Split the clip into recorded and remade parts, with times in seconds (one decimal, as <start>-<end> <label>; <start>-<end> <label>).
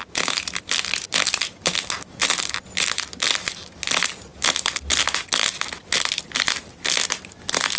0.0-7.8 recorded